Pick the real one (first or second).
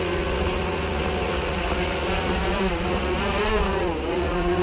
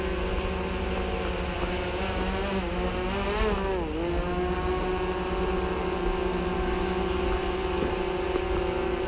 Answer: second